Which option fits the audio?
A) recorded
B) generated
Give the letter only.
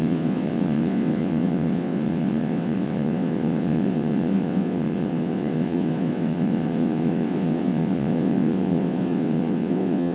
B